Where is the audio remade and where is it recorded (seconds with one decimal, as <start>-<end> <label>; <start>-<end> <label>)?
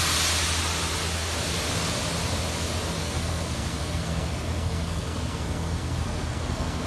0.0-3.0 recorded; 3.0-6.9 remade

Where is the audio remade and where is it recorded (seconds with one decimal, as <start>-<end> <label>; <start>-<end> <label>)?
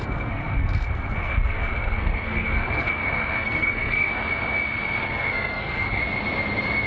0.0-4.1 remade; 4.1-5.0 recorded; 5.0-6.0 remade; 6.0-6.9 recorded